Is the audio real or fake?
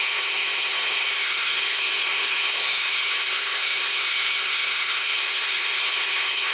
fake